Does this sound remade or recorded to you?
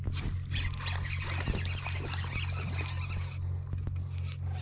recorded